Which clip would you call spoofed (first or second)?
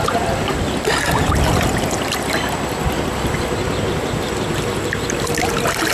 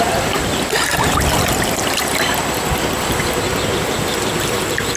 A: second